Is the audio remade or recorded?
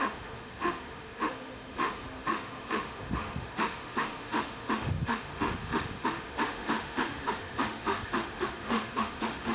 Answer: remade